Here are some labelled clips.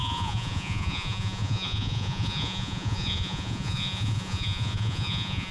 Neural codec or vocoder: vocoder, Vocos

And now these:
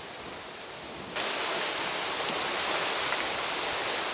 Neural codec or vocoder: none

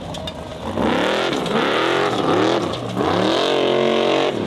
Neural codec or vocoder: none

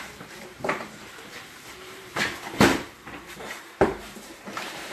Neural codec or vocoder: vocoder, BigVGAN v2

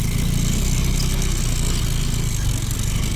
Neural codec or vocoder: none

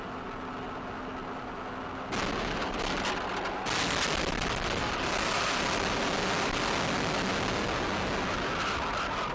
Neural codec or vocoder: none